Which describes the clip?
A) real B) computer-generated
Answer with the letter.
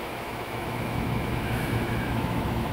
B